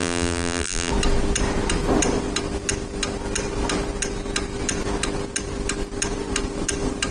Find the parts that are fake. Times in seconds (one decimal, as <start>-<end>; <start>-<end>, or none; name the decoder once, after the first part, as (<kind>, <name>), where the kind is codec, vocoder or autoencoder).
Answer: 0.0-0.9 (vocoder, BigVGAN v2)